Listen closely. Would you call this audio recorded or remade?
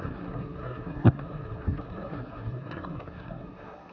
remade